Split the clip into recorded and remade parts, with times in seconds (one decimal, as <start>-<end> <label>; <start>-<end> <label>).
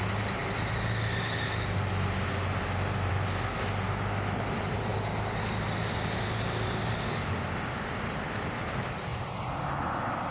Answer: 0.0-10.3 recorded